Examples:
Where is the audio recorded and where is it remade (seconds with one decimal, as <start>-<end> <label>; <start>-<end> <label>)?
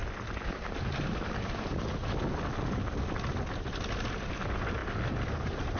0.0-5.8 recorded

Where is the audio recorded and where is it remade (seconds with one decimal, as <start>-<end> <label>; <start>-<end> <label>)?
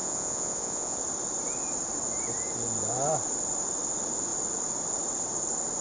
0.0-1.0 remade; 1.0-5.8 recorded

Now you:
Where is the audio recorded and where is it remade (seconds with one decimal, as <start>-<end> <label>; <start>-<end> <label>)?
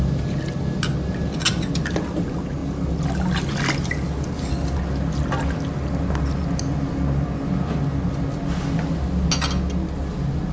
0.0-10.5 recorded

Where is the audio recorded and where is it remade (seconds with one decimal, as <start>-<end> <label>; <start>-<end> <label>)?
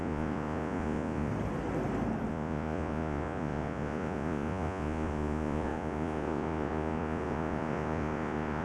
0.0-1.3 remade; 1.3-2.3 recorded; 2.3-8.6 remade